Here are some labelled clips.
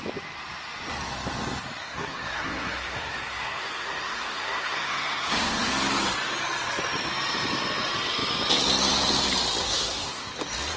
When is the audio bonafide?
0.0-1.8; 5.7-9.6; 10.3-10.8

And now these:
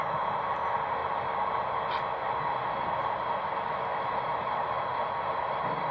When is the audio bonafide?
0.0-5.9

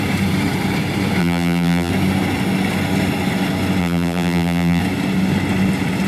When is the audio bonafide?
0.0-1.2; 1.9-3.8; 4.8-6.1